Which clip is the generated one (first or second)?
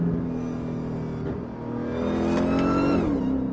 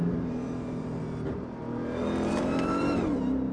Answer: second